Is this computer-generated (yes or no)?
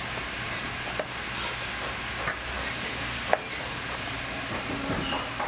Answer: no